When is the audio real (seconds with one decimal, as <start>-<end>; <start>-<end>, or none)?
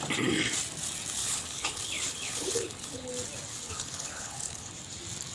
0.0-1.2; 3.1-3.5; 4.7-5.3